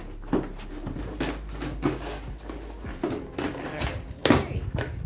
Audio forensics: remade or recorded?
recorded